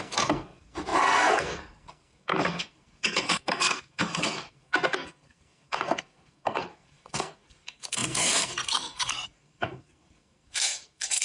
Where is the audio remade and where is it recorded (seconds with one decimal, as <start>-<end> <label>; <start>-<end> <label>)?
0.0-11.2 remade